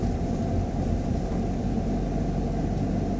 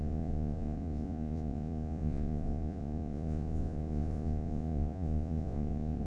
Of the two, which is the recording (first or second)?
first